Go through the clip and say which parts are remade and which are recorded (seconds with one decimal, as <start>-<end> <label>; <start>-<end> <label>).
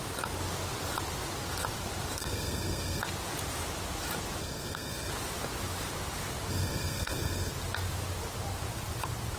0.0-2.2 recorded; 2.2-3.0 remade; 3.0-4.4 recorded; 4.4-5.1 remade; 5.1-6.5 recorded; 6.5-7.5 remade; 7.5-9.4 recorded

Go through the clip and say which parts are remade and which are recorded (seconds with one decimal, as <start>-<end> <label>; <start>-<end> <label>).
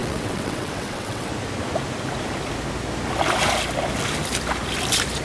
0.0-1.3 remade; 1.3-5.2 recorded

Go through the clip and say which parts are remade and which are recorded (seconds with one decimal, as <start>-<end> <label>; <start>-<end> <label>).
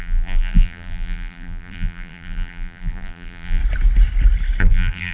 0.0-3.6 remade; 3.6-4.6 recorded; 4.6-5.1 remade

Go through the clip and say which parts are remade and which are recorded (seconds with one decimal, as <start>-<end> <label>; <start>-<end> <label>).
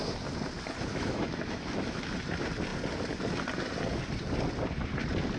0.0-0.9 recorded; 0.9-2.1 remade; 2.1-5.4 recorded